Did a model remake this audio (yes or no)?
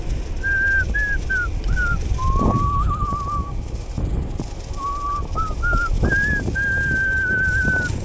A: no